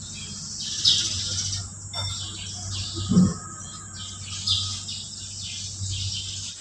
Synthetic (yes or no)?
no